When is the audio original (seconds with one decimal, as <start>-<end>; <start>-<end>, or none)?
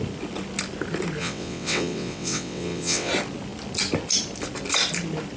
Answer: 0.0-1.2; 3.1-5.4